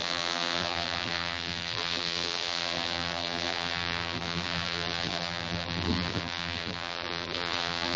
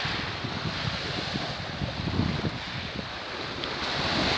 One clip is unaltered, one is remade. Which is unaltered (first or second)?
second